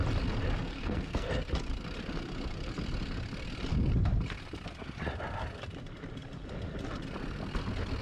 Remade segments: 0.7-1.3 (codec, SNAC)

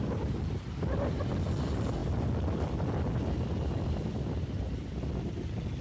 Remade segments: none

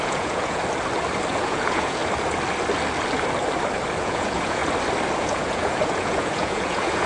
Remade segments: 0.0-0.6 (vocoder, Vocos); 1.3-2.0; 4.0-4.6; 5.2-7.1

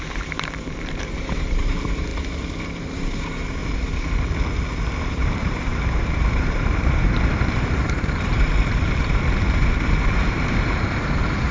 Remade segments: 0.0-2.1 (vocoder, BigVGAN v2); 2.8-3.6; 5.2-11.5

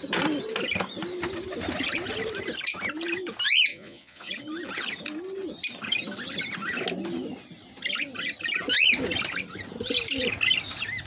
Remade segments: 3.7-4.3 (vocoder, Vocos)